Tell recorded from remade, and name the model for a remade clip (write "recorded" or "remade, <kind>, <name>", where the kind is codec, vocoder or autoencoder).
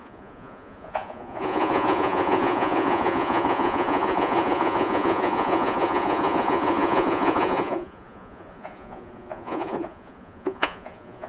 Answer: remade, vocoder, Vocos